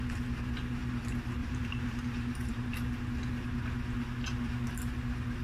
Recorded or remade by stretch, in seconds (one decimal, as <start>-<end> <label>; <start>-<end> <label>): 0.0-1.4 recorded; 1.4-2.5 remade; 2.5-5.4 recorded